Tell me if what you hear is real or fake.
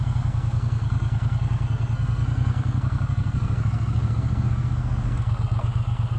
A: fake